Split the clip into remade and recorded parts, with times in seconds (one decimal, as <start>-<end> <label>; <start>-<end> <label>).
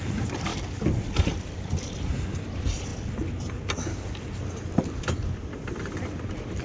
0.0-2.9 remade; 2.9-5.8 recorded; 5.8-6.6 remade